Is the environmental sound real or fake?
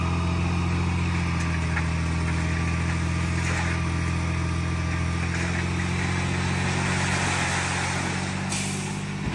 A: real